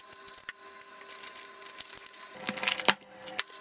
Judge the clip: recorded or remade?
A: recorded